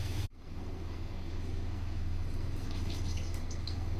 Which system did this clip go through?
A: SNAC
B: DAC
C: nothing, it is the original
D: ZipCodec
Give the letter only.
A